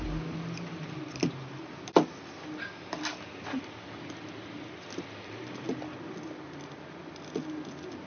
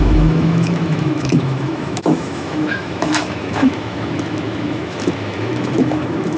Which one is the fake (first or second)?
second